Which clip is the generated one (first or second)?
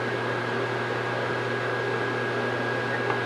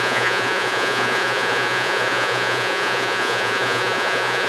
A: second